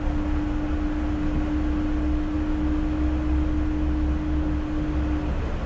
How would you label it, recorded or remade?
recorded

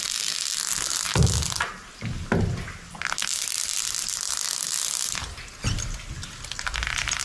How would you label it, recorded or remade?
recorded